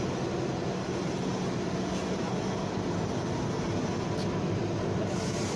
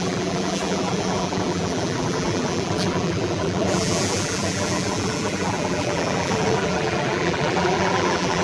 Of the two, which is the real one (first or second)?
first